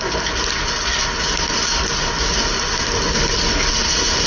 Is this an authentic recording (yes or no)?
yes